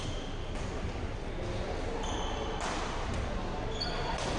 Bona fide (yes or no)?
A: yes